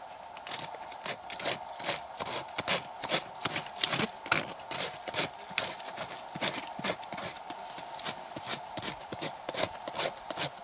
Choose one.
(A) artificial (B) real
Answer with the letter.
B